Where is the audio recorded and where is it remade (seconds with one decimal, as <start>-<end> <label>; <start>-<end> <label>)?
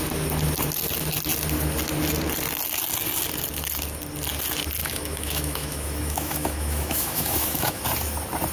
0.0-4.8 recorded; 4.8-7.8 remade; 7.8-8.5 recorded